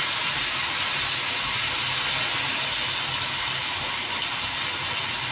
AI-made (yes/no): no